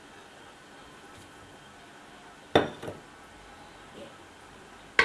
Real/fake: real